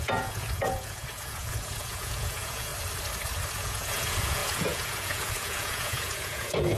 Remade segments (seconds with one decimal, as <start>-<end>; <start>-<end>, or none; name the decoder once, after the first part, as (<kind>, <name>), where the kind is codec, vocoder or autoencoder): 0.0-2.7 (vocoder, Vocos); 3.6-6.8